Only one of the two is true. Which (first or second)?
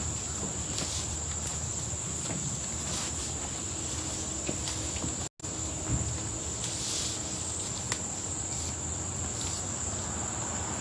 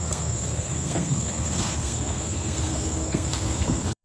first